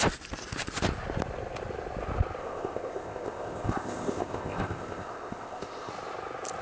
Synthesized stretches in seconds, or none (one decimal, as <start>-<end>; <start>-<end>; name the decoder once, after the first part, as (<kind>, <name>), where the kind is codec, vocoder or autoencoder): 2.4-5.9 (codec, ZipCodec)